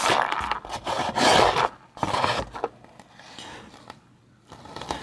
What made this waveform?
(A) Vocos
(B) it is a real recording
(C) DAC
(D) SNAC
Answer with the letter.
B